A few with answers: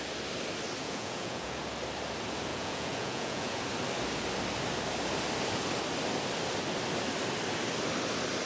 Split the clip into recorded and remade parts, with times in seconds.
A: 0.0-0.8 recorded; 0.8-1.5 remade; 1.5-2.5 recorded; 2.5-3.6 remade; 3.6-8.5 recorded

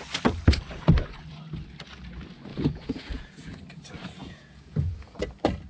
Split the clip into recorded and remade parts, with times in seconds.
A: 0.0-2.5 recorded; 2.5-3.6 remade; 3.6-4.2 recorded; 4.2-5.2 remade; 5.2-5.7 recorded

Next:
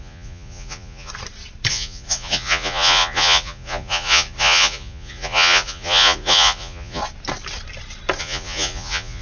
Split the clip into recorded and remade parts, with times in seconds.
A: 0.0-1.1 remade; 1.1-1.7 recorded; 1.7-7.0 remade; 7.0-8.2 recorded; 8.2-9.2 remade

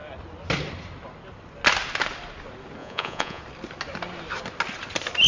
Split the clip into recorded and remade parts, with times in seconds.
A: 0.0-2.8 recorded; 2.8-3.4 remade; 3.4-5.3 recorded

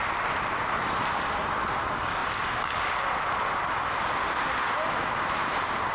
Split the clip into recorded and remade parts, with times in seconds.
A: 0.0-5.9 recorded

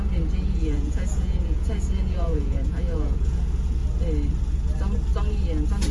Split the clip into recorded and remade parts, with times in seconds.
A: 0.0-0.6 recorded; 0.6-3.4 remade; 3.4-5.9 recorded